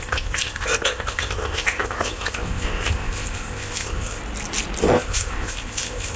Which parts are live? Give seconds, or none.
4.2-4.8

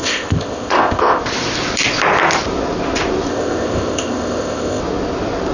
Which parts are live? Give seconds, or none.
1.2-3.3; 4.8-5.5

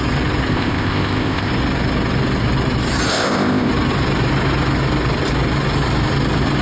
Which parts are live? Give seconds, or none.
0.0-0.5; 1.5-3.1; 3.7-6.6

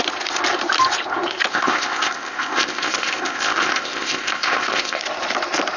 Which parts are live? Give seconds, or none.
0.0-1.5; 5.0-5.8

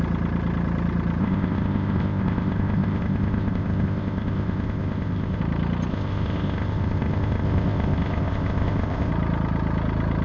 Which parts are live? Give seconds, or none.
0.0-1.2; 5.4-5.9; 9.1-10.2

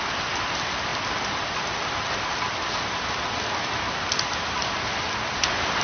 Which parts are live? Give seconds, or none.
0.0-5.8

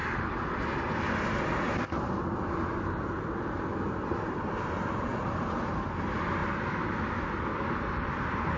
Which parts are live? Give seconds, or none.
0.0-8.6

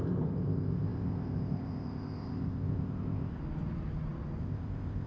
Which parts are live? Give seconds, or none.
3.4-4.4